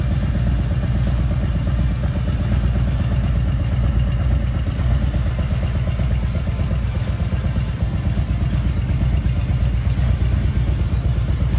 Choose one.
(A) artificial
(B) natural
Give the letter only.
B